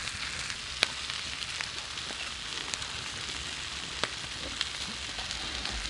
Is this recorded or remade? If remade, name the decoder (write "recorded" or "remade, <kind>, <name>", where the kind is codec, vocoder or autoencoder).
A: recorded